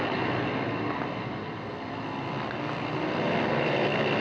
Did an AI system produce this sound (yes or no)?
no